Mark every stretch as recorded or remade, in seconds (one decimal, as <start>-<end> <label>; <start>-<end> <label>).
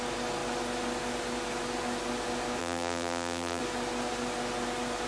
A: 0.0-2.6 recorded; 2.6-3.6 remade; 3.6-5.1 recorded